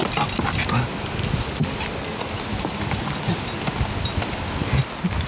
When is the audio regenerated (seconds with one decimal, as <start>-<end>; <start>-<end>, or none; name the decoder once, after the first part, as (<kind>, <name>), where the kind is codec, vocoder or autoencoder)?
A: none